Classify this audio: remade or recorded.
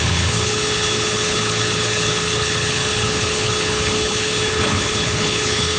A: remade